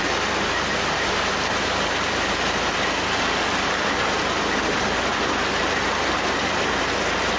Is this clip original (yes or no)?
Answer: yes